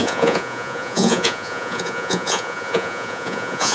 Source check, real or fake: fake